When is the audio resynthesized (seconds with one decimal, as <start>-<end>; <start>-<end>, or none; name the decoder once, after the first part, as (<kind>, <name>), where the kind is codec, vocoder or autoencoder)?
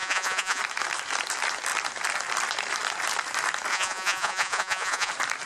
0.0-0.6 (vocoder, Vocos); 3.7-5.1